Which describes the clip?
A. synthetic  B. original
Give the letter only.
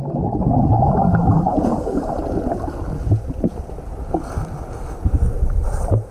B